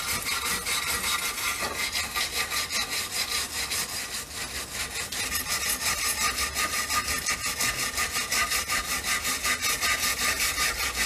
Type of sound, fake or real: real